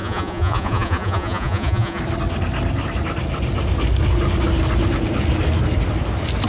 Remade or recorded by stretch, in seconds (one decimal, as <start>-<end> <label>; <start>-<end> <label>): 0.0-2.0 remade; 2.0-6.5 recorded